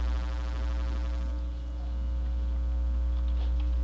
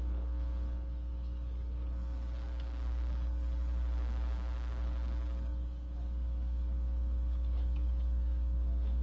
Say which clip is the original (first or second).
first